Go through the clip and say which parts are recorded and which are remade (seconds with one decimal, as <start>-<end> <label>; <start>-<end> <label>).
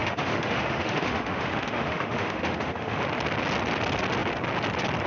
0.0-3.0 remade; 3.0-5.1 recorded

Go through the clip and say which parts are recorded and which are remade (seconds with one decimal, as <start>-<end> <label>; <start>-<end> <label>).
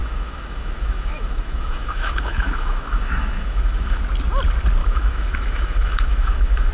0.0-4.0 remade; 4.0-4.8 recorded; 4.8-6.7 remade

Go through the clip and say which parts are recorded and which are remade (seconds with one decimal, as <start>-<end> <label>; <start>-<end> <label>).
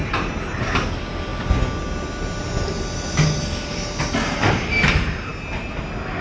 0.0-6.2 recorded